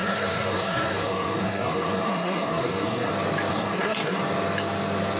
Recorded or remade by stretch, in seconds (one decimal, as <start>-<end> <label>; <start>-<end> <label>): 0.0-3.1 remade; 3.1-3.5 recorded; 3.5-4.2 remade; 4.2-5.2 recorded